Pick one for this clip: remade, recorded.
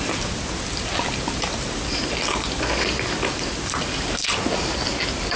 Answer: recorded